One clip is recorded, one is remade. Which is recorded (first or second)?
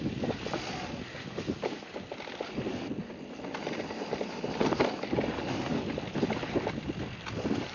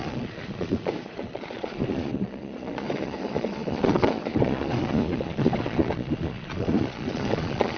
first